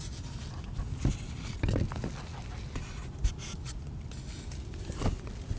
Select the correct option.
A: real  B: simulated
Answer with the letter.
A